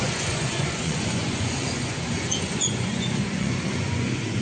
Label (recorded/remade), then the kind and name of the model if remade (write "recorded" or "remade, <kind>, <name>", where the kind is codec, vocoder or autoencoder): remade, vocoder, Vocos